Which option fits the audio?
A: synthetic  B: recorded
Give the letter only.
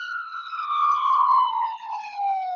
A